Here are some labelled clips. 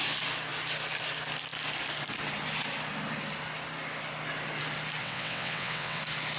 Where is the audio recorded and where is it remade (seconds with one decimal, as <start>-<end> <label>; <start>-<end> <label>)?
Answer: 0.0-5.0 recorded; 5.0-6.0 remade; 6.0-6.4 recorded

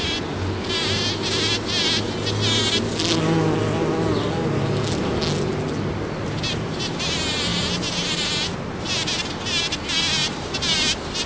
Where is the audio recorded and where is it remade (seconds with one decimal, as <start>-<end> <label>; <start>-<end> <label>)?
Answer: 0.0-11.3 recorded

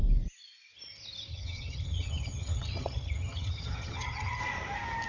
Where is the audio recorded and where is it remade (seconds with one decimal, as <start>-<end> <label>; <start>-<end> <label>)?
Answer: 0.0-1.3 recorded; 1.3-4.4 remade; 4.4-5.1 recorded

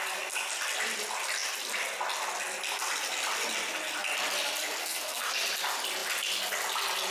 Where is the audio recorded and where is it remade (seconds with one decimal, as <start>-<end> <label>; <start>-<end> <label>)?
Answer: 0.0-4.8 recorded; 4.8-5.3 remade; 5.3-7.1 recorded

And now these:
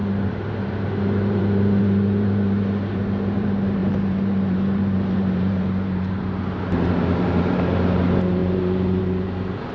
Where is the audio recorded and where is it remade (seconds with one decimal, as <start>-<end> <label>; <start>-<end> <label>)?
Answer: 0.0-9.7 remade

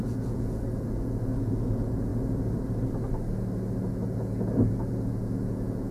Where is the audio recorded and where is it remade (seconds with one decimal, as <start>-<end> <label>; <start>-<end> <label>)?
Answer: 0.0-2.1 remade; 2.1-3.9 recorded; 3.9-5.9 remade